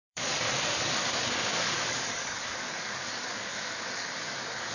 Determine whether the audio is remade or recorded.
remade